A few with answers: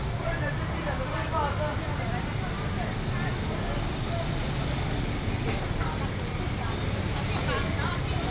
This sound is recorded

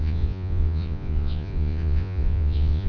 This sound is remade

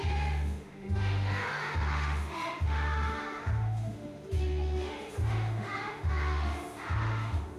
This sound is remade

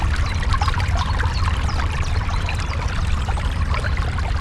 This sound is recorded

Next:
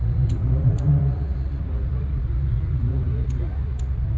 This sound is remade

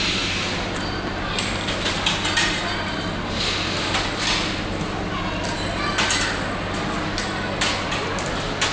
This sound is recorded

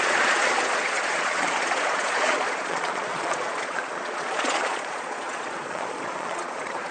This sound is remade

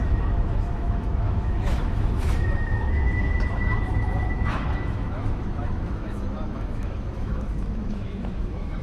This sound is remade